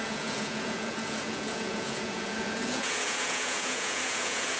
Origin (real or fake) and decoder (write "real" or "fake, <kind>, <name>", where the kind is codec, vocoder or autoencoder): fake, vocoder, Vocos